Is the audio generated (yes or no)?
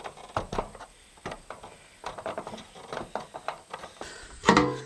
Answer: no